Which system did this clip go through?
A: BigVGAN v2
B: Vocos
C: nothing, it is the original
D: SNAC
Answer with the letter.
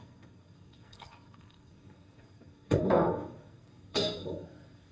D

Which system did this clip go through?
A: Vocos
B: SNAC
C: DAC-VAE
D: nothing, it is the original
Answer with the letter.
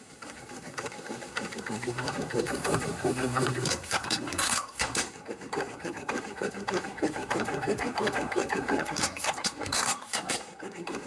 B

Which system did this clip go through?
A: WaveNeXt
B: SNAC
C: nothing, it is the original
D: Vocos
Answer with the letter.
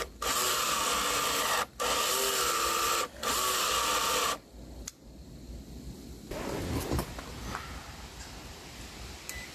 C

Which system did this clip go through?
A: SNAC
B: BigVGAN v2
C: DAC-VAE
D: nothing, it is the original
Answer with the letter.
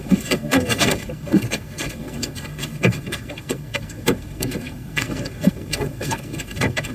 A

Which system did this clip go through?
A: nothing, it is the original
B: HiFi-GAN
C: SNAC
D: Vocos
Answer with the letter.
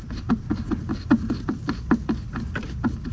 A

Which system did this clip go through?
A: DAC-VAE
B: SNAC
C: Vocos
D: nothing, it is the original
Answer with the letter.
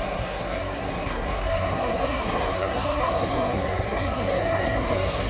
B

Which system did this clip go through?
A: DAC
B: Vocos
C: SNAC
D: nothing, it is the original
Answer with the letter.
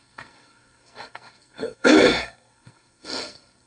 C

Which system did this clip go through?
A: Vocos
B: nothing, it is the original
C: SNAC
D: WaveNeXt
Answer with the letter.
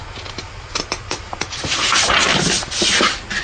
B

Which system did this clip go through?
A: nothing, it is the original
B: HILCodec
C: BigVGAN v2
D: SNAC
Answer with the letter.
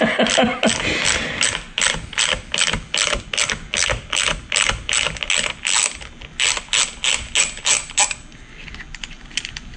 A